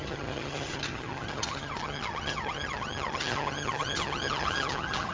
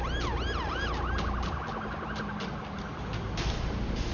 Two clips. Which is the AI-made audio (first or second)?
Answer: first